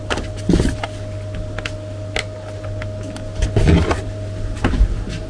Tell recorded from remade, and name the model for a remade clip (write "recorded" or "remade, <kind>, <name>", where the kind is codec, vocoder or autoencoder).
recorded